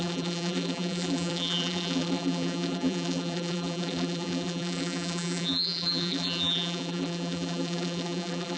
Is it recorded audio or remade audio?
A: remade